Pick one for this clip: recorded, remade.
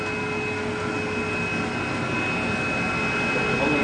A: recorded